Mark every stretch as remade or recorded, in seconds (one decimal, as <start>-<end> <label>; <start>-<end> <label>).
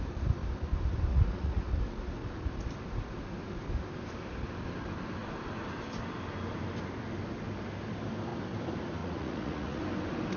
0.0-1.1 recorded; 1.1-1.6 remade; 1.6-9.0 recorded; 9.0-9.8 remade; 9.8-10.4 recorded